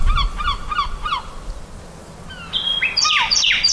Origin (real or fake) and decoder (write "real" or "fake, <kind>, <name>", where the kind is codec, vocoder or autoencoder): real